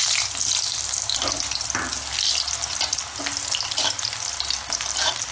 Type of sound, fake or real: real